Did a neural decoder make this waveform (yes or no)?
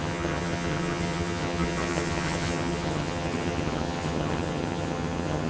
yes